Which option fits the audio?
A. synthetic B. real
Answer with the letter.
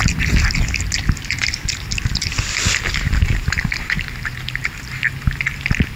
B